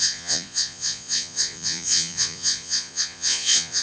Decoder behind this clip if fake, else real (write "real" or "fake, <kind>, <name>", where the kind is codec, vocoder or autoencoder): fake, vocoder, Vocos